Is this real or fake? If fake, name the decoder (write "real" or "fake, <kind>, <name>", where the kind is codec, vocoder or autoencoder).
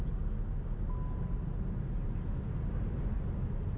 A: real